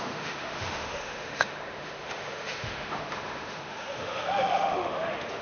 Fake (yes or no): yes